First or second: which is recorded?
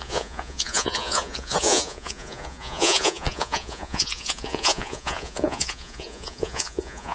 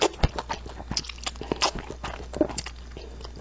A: second